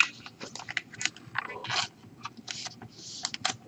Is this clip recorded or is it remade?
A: recorded